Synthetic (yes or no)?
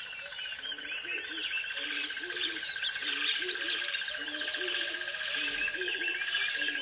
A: yes